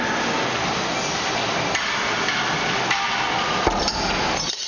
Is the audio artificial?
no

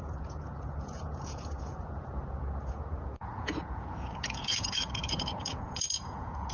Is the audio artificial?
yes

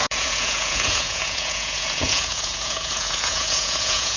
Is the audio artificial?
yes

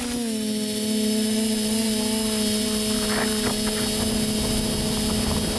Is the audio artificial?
no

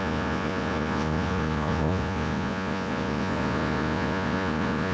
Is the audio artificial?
yes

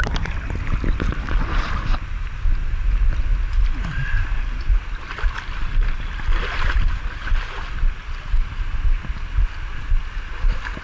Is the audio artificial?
no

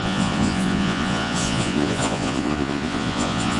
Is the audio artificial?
yes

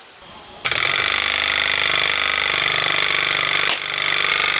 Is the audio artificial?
no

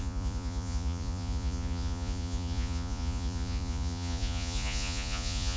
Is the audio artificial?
yes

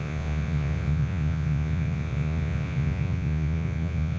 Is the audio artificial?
yes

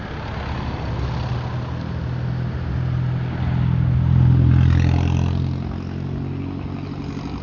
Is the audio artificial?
no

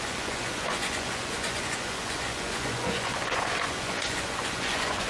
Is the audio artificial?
yes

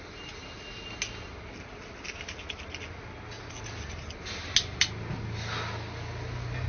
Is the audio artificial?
no